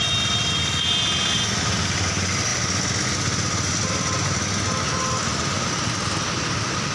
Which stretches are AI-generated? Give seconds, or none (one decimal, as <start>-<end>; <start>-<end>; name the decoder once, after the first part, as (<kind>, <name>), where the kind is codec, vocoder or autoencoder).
none